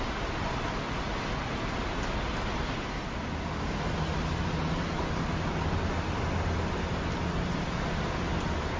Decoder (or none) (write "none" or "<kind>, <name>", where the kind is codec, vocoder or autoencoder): none